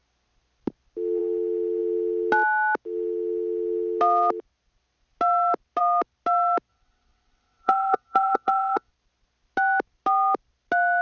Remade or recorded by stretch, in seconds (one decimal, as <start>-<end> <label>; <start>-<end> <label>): 0.0-6.7 recorded; 6.7-8.9 remade; 8.9-11.0 recorded